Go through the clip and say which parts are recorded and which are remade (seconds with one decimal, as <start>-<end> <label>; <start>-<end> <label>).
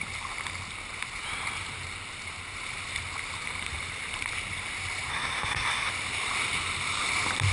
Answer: 0.0-5.1 recorded; 5.1-5.9 remade; 5.9-7.5 recorded